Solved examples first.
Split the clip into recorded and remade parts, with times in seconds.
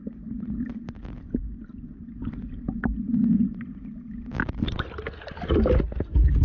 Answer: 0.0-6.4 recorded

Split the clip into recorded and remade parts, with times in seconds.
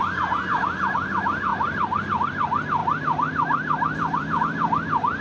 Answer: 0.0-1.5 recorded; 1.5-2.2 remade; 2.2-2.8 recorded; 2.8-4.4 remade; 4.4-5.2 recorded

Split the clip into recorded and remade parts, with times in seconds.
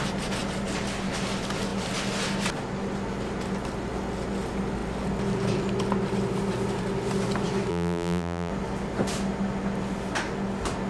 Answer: 0.0-7.7 recorded; 7.7-8.5 remade; 8.5-10.9 recorded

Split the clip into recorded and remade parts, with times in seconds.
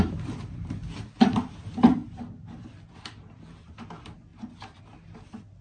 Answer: 0.0-2.0 recorded; 2.0-3.4 remade; 3.4-5.6 recorded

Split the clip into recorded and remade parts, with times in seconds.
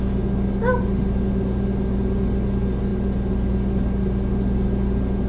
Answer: 0.0-5.3 recorded